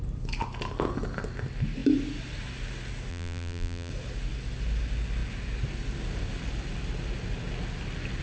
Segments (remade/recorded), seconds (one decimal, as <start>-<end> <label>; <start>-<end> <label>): 0.0-3.1 recorded; 3.1-3.9 remade; 3.9-8.2 recorded